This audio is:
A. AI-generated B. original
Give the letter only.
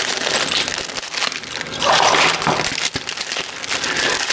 B